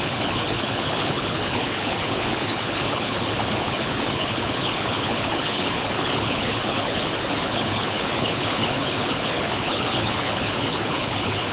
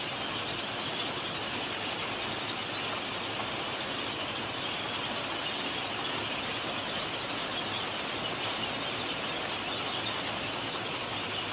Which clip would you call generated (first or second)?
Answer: first